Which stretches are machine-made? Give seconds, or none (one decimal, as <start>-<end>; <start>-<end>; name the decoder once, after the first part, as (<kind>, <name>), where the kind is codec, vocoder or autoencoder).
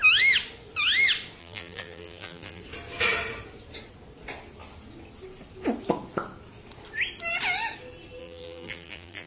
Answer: 1.4-2.6 (vocoder, BigVGAN v2); 8.2-9.3